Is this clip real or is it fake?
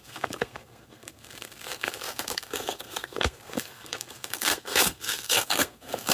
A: fake